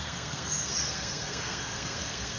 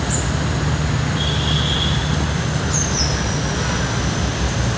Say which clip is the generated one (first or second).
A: first